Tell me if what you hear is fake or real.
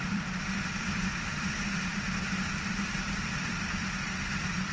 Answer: fake